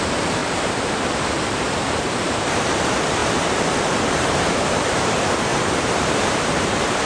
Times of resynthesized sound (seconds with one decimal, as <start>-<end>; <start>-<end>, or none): 0.0-7.1